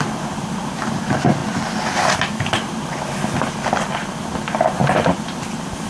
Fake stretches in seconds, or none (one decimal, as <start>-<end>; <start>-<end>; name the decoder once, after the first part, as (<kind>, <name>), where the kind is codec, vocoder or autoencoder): none